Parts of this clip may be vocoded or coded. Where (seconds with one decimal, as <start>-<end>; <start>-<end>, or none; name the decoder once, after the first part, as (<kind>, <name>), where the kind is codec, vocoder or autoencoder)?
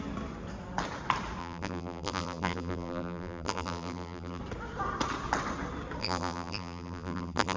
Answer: 1.4-4.4 (vocoder, BigVGAN v2); 6.0-7.6